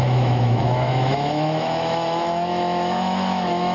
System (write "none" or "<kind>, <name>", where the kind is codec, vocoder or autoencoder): autoencoder, DAC-VAE